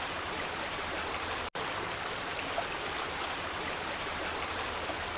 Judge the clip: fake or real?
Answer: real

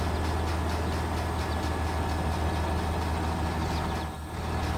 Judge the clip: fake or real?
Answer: real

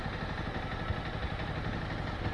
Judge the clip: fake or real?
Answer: real